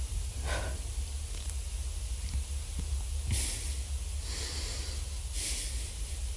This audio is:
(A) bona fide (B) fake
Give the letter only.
A